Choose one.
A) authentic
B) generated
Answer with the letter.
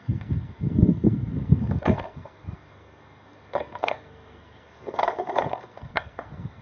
B